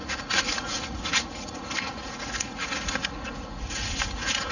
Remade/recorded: remade